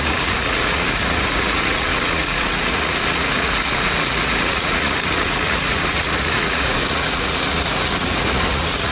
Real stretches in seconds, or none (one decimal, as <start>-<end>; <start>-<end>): none